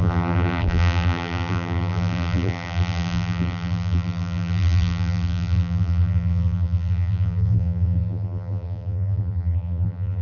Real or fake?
fake